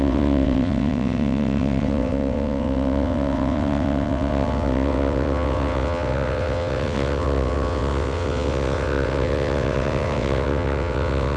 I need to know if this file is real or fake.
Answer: fake